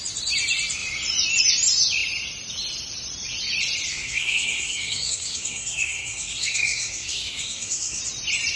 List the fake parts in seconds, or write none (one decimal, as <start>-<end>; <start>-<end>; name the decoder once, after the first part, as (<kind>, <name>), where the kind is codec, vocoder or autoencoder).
3.9-8.0 (codec, SNAC)